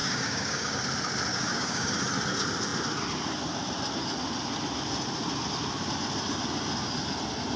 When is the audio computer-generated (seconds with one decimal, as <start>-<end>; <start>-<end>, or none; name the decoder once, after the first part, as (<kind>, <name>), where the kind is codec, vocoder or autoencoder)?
0.0-0.8 (codec, DAC); 1.3-1.9